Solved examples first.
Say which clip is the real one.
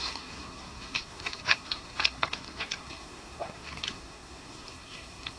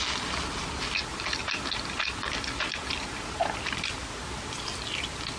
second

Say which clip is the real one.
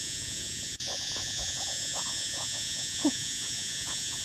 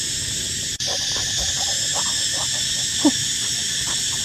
second